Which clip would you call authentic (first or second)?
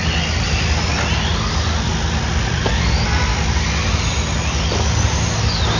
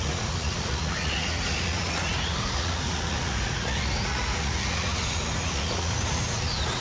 first